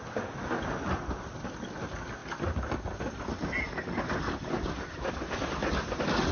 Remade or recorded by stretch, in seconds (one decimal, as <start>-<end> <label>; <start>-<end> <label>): 0.0-6.3 recorded

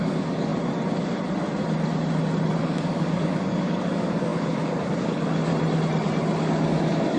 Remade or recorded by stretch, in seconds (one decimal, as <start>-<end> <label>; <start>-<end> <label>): 0.0-0.5 remade; 0.5-2.6 recorded; 2.6-5.5 remade; 5.5-6.4 recorded; 6.4-7.2 remade